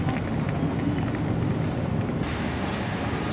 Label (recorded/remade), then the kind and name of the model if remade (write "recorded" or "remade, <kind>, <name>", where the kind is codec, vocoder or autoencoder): recorded